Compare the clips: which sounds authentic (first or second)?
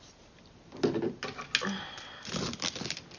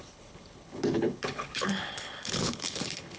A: first